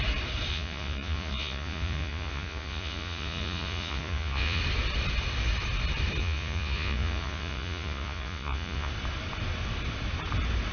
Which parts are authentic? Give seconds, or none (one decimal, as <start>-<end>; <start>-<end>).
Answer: 0.0-0.5; 4.6-6.2; 8.9-10.7